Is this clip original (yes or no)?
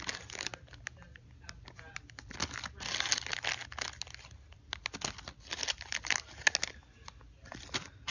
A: yes